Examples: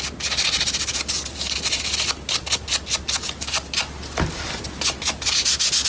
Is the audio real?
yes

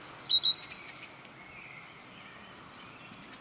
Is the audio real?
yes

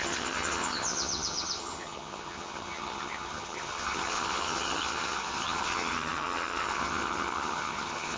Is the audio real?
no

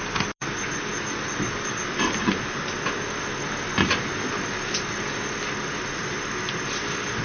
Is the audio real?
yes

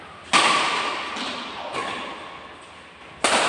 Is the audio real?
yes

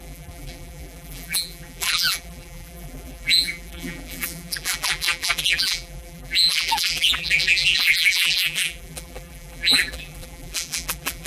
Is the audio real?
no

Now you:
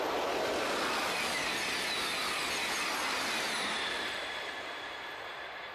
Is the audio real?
yes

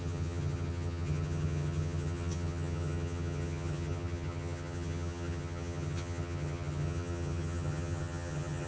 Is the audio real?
no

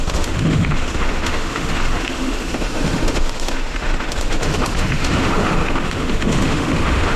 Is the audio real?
no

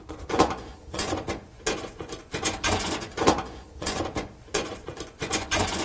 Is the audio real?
no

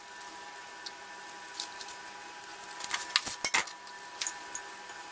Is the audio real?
yes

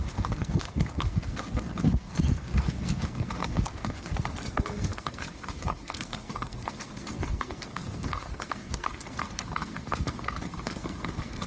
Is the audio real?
no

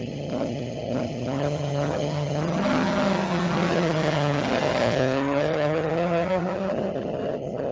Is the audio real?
no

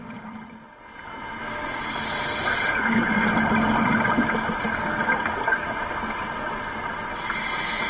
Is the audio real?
yes